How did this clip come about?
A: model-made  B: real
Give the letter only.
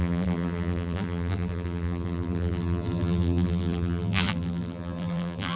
A